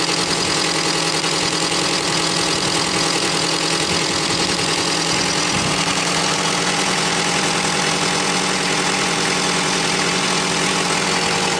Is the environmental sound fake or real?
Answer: fake